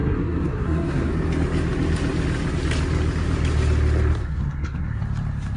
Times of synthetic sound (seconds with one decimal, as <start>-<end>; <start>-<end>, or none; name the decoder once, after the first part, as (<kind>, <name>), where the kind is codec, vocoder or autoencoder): 0.0-1.1 (codec, SNAC); 4.2-5.0